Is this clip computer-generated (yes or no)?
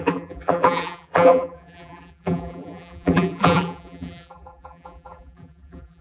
yes